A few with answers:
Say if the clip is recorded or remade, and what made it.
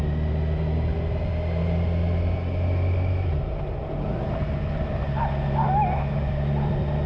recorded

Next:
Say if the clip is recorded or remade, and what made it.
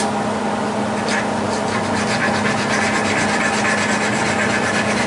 recorded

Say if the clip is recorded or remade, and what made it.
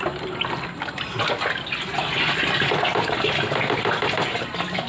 recorded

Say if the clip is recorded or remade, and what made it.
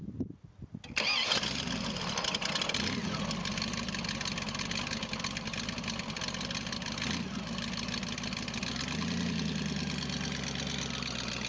recorded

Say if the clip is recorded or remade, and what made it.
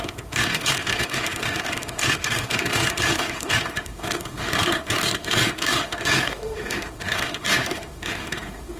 remade, autoencoder, DAC-VAE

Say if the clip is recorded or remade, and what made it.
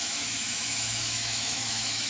remade, autoencoder, DAC-VAE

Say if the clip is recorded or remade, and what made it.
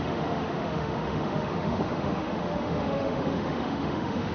remade, autoencoder, DAC-VAE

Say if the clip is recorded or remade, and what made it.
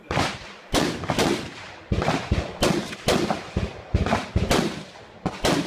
recorded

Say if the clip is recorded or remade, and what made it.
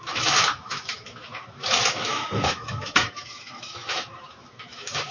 remade, autoencoder, DAC-VAE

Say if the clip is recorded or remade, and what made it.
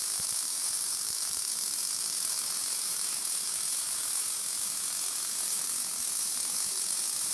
remade, autoencoder, DAC-VAE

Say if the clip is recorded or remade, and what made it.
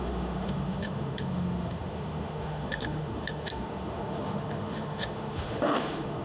remade, autoencoder, DAC-VAE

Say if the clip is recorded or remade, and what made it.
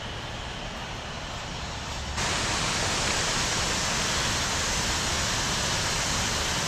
recorded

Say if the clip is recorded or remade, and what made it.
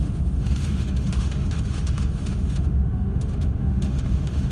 remade, autoencoder, DAC-VAE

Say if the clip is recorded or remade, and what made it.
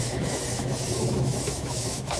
remade, autoencoder, DAC-VAE